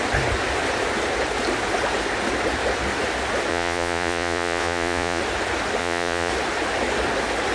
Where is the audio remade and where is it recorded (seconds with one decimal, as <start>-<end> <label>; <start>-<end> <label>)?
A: 0.0-3.5 recorded; 3.5-5.2 remade; 5.2-5.8 recorded; 5.8-6.3 remade; 6.3-7.5 recorded